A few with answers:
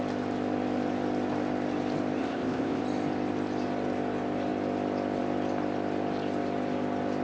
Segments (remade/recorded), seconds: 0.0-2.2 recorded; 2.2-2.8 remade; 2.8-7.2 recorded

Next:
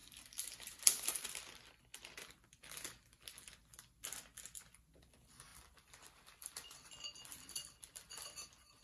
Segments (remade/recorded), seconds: 0.0-1.8 remade; 1.8-5.5 recorded; 5.5-8.8 remade